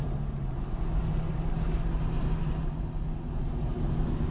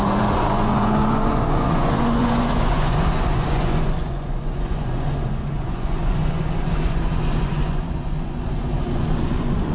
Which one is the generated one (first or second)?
second